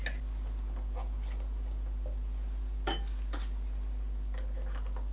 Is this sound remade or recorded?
recorded